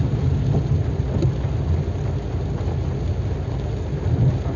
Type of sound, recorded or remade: recorded